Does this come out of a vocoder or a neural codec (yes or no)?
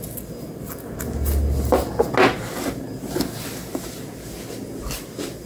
no